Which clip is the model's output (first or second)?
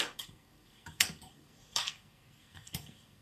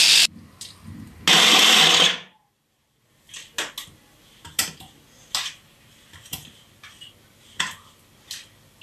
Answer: first